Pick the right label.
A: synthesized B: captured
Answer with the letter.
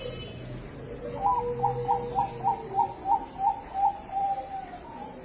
B